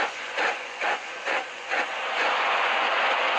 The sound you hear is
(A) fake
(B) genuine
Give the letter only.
A